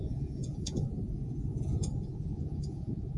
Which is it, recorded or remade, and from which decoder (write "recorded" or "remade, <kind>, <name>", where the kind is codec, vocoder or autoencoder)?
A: remade, vocoder, Vocos